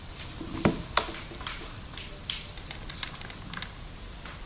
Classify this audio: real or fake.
real